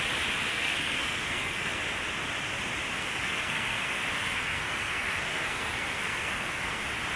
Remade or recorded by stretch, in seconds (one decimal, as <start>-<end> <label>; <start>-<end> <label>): 0.0-0.5 recorded; 0.5-1.8 remade; 1.8-2.9 recorded; 2.9-6.8 remade; 6.8-7.2 recorded